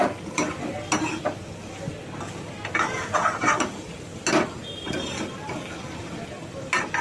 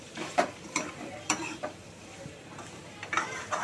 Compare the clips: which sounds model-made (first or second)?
second